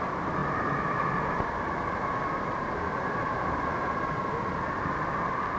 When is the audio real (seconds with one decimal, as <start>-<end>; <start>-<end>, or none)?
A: 0.0-0.4; 2.7-5.6